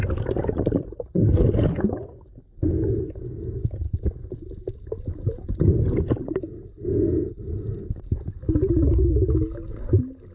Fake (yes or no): no